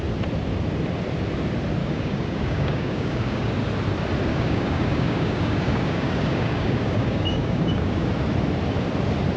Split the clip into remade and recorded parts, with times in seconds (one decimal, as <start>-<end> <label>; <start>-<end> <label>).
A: 0.0-1.8 recorded; 1.8-3.5 remade; 3.5-4.3 recorded; 4.3-8.1 remade; 8.1-9.4 recorded